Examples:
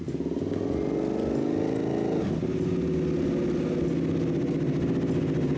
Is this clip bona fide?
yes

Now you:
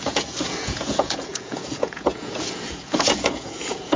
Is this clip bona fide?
no